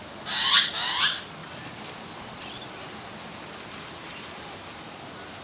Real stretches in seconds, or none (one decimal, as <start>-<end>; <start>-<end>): 0.0-5.4